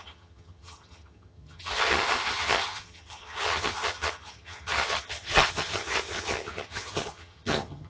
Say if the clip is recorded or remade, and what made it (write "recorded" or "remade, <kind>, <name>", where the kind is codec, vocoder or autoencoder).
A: remade, vocoder, HiFi-GAN